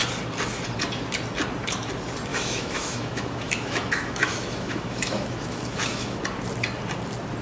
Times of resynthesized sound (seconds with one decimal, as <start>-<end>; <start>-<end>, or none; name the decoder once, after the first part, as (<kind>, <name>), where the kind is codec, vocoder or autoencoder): 2.3-6.2 (autoencoder, DAC-VAE)

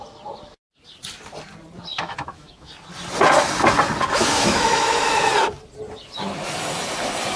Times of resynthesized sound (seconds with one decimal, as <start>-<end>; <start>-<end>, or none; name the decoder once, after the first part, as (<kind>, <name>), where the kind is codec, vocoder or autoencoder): 1.9-2.7 (autoencoder, DAC-VAE); 4.2-5.3